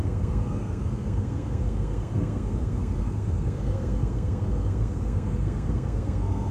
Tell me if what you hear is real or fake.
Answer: fake